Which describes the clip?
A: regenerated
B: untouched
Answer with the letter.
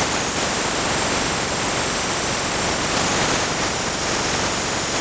B